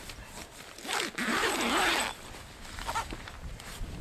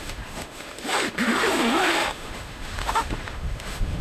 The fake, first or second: second